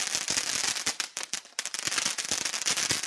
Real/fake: real